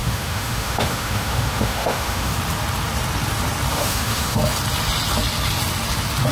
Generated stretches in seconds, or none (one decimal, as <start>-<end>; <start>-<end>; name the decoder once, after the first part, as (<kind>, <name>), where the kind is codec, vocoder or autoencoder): 0.0-2.3 (autoencoder, DAC-VAE); 3.7-4.4